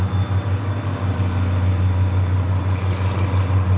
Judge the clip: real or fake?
real